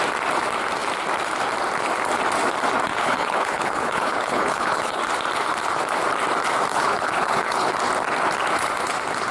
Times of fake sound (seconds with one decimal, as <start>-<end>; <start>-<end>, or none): 2.9-5.0; 6.7-7.7